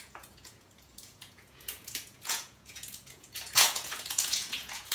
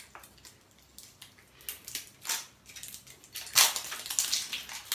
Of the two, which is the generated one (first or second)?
first